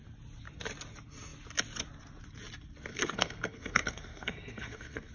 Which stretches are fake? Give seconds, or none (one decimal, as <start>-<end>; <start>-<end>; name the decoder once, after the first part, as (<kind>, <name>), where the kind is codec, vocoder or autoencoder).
2.9-5.1 (codec, SNAC)